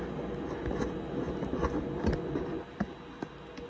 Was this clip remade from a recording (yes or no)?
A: no